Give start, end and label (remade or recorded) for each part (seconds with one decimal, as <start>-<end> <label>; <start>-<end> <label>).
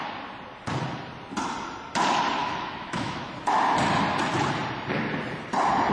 0.0-2.4 recorded; 2.4-3.3 remade; 3.3-5.9 recorded